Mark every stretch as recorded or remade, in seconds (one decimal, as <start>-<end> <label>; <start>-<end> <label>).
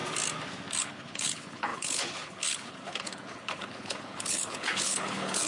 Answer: 0.0-0.8 recorded; 0.8-5.5 remade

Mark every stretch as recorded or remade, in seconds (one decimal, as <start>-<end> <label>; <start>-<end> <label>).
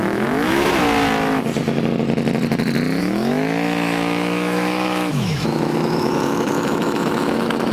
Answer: 0.0-0.7 remade; 0.7-3.0 recorded; 3.0-7.7 remade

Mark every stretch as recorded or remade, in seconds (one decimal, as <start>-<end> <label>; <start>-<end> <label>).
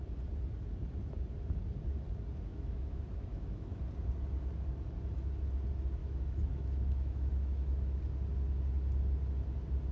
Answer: 0.0-2.5 recorded; 2.5-3.8 remade; 3.8-6.0 recorded; 6.0-8.0 remade; 8.0-9.9 recorded